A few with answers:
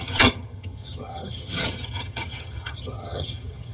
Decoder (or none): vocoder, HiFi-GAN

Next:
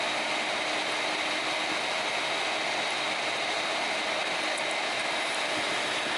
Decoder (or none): none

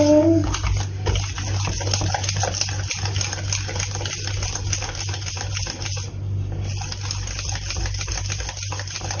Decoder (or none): none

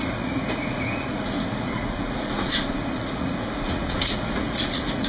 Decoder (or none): vocoder, Vocos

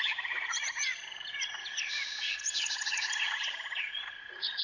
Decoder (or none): vocoder, Vocos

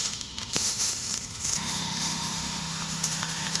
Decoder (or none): autoencoder, DAC-VAE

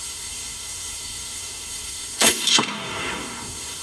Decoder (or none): codec, SNAC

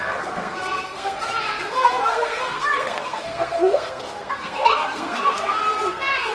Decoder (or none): codec, SNAC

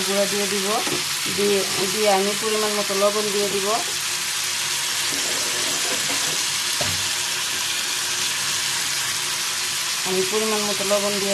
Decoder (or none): none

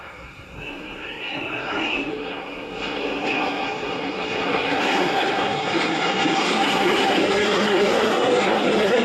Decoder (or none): codec, SNAC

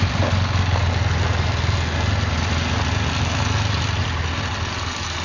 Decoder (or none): none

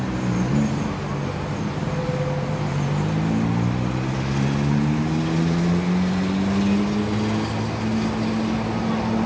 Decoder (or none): none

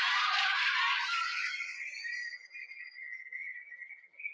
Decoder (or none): none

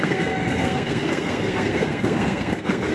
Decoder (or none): codec, SNAC